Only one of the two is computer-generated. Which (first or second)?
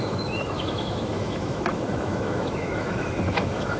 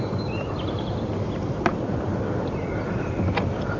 first